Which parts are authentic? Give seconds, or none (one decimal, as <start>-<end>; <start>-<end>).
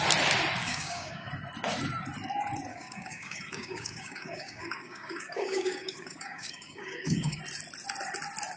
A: 0.0-0.6; 1.3-2.7; 7.4-8.6